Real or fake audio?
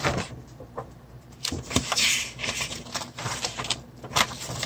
fake